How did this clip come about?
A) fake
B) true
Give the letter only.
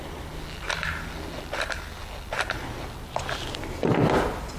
B